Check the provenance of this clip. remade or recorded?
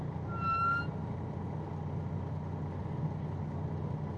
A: recorded